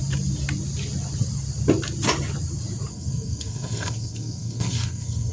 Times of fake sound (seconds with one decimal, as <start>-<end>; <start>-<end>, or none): 2.9-5.3